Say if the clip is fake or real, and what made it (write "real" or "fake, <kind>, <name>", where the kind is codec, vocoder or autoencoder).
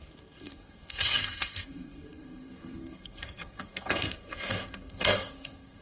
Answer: fake, codec, SNAC